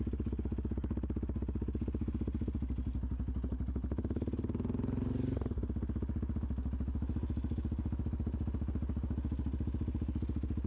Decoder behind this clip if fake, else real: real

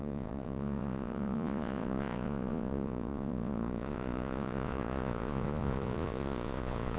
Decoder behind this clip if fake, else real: fake, vocoder, Vocos